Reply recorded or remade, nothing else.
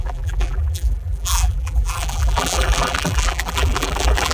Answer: remade